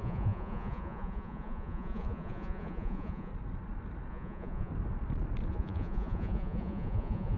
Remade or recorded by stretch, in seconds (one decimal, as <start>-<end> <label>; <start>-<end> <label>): 0.0-3.3 remade; 3.3-4.1 recorded; 4.1-4.7 remade; 4.7-5.5 recorded; 5.5-7.4 remade